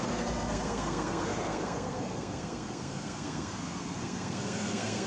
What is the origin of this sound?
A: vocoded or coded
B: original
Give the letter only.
A